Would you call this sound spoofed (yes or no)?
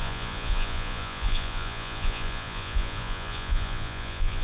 yes